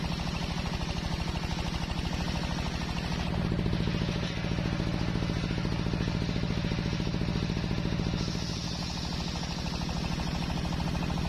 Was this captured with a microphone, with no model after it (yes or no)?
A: yes